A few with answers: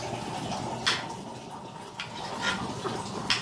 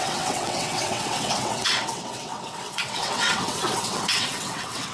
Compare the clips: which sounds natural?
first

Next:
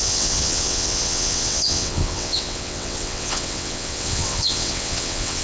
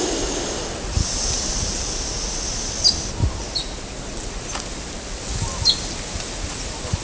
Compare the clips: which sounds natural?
second